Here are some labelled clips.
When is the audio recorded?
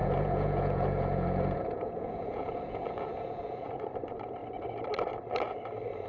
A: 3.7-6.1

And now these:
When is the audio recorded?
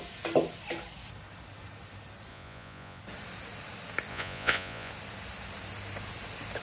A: 0.0-2.3; 3.0-4.1; 4.9-6.6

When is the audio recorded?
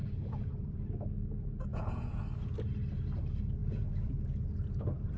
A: 0.5-1.7; 2.2-3.6; 4.1-5.2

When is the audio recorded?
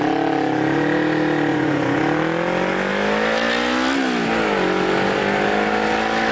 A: 0.0-1.5; 2.0-6.3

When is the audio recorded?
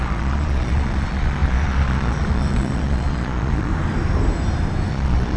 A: 3.7-4.9